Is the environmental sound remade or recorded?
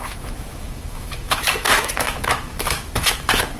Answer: remade